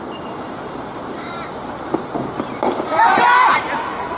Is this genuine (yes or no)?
yes